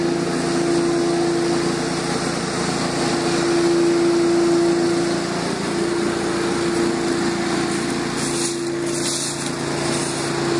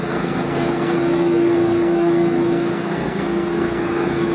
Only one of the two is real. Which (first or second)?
first